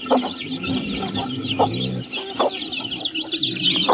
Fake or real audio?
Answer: real